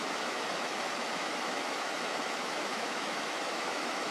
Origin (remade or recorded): remade